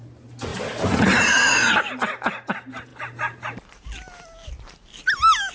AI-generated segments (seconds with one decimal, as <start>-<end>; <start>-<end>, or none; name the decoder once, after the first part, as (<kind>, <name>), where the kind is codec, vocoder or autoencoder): none